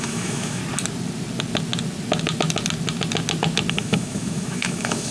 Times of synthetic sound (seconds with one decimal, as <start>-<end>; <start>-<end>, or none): 0.0-0.6; 3.7-5.1